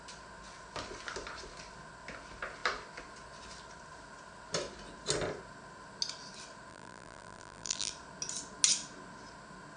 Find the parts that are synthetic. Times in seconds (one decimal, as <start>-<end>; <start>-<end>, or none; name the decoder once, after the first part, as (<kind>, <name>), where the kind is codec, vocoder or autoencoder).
6.7-7.9 (vocoder, BigVGAN v2)